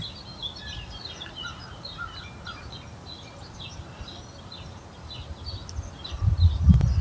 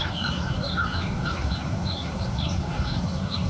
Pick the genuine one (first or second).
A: first